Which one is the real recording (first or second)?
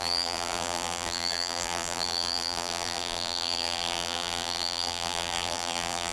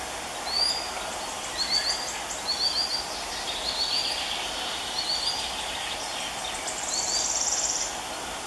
second